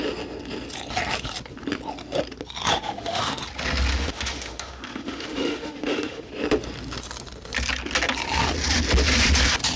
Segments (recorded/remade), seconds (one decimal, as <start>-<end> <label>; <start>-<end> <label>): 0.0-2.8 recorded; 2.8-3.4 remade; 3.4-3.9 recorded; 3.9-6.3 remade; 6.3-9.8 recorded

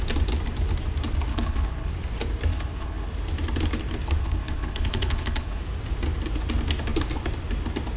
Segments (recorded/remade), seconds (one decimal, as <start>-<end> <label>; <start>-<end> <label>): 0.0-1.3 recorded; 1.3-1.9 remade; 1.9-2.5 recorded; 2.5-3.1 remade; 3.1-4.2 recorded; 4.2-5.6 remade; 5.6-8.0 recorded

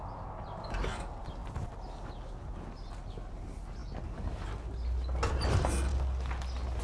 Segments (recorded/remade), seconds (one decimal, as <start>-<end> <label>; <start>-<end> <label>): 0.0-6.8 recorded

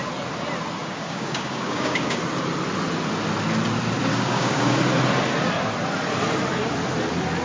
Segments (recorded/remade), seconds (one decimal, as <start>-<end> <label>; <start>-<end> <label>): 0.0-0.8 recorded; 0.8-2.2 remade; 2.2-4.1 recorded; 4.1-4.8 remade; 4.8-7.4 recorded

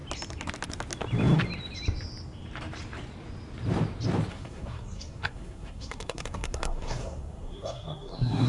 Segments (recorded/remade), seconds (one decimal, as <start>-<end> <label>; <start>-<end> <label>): 0.0-4.3 recorded; 4.3-8.5 remade

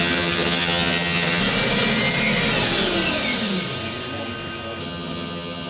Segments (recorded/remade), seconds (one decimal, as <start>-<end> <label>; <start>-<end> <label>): 0.0-1.4 remade; 1.4-4.8 recorded; 4.8-5.7 remade